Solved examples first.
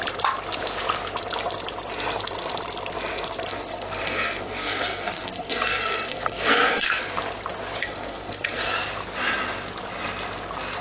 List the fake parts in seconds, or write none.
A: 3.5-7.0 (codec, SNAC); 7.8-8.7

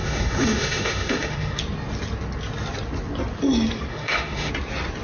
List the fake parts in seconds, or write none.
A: 0.0-1.6 (autoencoder, DAC-VAE); 3.9-4.5

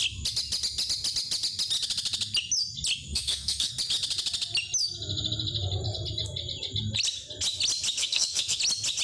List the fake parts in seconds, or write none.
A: 3.1-3.7 (codec, SNAC); 8.0-8.6